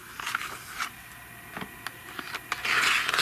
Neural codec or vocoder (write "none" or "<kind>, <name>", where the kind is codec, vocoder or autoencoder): none